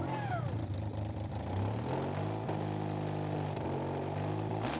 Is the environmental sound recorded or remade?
recorded